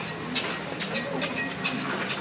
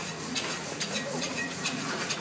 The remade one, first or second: second